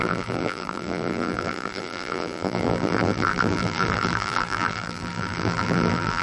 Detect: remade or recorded remade